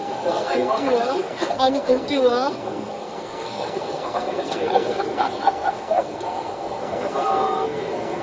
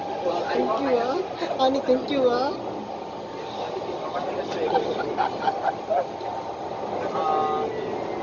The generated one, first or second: first